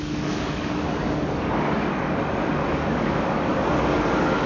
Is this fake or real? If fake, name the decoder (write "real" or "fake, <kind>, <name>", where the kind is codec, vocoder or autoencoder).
fake, codec, DAC